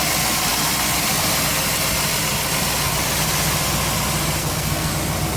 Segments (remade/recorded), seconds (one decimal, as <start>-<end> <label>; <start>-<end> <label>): 0.0-4.4 recorded; 4.4-4.9 remade; 4.9-5.4 recorded